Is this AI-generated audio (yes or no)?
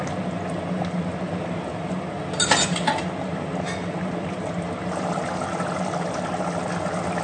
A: no